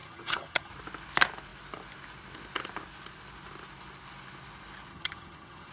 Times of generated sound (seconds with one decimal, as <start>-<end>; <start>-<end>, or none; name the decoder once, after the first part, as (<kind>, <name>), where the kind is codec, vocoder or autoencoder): 0.0-0.7 (vocoder, HiFi-GAN); 4.9-5.7